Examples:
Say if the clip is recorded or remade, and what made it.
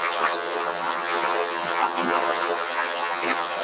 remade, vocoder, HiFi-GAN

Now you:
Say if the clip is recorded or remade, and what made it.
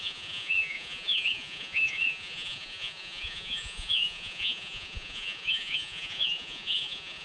remade, vocoder, Vocos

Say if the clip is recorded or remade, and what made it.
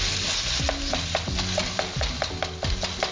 recorded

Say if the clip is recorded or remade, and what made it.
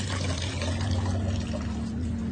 recorded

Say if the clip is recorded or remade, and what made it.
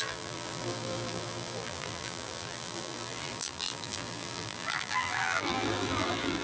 remade, vocoder, BigVGAN v2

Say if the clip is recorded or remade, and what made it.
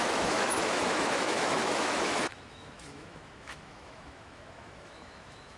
remade, autoencoder, DAC-VAE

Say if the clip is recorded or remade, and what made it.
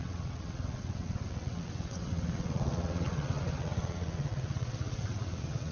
remade, vocoder, WaveNeXt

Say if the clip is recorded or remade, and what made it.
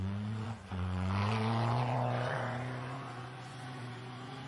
remade, vocoder, Vocos